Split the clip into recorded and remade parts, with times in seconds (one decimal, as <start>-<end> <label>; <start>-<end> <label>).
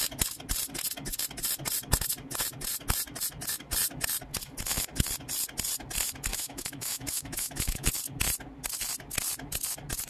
0.0-6.3 recorded; 6.3-7.9 remade; 7.9-10.1 recorded